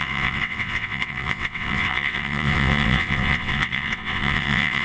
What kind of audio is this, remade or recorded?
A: remade